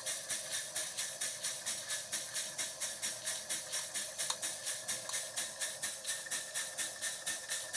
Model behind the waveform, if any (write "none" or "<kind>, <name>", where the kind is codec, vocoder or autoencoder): none